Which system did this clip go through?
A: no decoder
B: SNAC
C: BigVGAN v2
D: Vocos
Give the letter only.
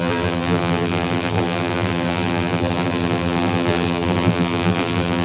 C